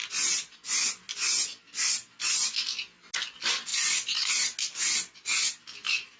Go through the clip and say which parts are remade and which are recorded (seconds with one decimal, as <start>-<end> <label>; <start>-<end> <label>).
0.0-6.2 recorded